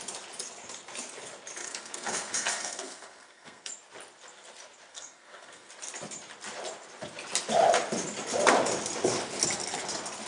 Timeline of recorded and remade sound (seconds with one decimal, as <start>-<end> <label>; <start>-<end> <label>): 0.0-1.6 recorded; 1.6-3.7 remade; 3.7-4.9 recorded; 4.9-5.7 remade; 5.7-10.3 recorded

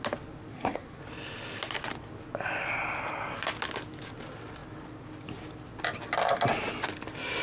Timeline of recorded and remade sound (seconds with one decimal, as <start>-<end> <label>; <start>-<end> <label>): 0.0-0.5 recorded; 0.5-1.0 remade; 1.0-7.4 recorded